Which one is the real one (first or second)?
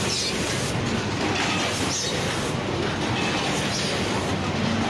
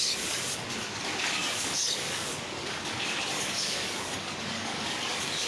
first